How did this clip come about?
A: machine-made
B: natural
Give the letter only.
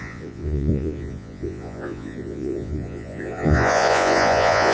A